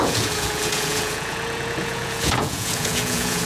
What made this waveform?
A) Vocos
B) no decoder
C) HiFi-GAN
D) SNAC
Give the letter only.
A